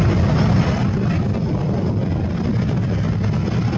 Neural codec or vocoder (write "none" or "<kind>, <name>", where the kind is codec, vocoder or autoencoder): none